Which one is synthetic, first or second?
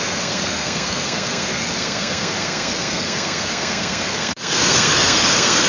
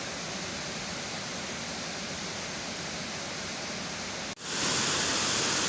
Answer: first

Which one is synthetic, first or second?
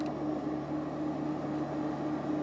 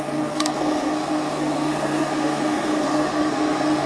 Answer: second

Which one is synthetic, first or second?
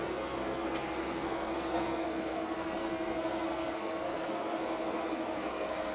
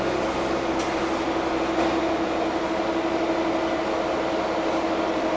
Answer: first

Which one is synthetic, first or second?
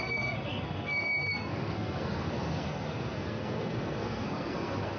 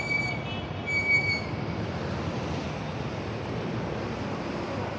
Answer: first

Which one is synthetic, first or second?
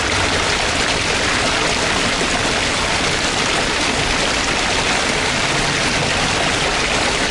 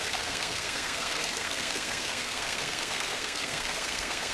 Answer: second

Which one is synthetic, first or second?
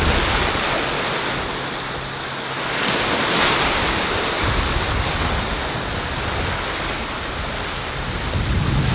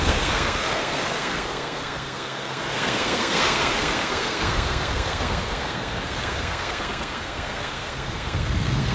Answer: second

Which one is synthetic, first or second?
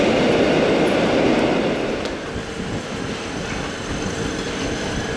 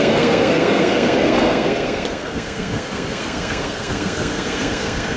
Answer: second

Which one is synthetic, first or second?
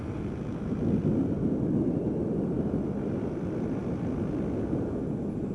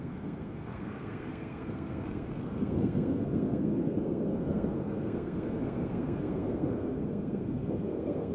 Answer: second